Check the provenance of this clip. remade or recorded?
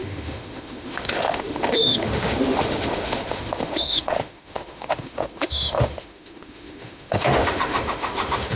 remade